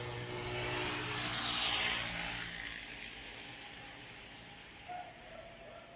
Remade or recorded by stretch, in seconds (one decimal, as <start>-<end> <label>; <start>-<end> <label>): 0.0-6.0 recorded